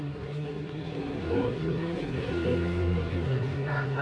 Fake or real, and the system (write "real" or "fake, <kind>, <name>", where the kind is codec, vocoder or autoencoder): fake, codec, SNAC